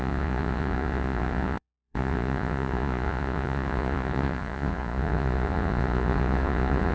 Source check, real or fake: fake